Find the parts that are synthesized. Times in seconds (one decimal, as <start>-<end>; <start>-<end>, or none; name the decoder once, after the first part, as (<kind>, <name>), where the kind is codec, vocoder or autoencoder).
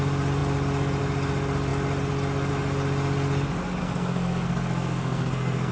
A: 3.8-5.7 (codec, SNAC)